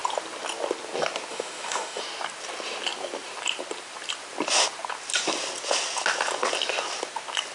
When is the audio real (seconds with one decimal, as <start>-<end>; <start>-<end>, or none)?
0.0-1.3; 2.0-7.5